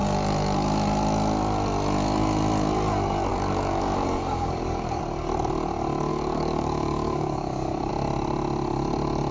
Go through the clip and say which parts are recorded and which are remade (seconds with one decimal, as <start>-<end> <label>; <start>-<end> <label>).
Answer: 0.0-3.3 recorded; 3.3-5.0 remade; 5.0-6.1 recorded; 6.1-7.9 remade; 7.9-9.3 recorded